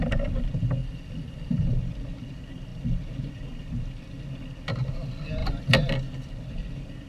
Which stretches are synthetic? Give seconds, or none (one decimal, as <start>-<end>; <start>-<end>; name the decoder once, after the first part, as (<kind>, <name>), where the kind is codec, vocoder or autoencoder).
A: 0.8-1.8 (vocoder, BigVGAN v2); 5.4-5.9